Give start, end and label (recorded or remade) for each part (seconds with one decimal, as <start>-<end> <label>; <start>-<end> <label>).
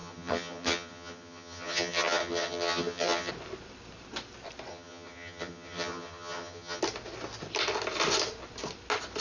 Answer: 0.0-3.3 remade; 3.3-4.7 recorded; 4.7-6.8 remade; 6.8-9.2 recorded